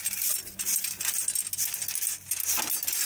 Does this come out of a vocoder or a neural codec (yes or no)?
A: no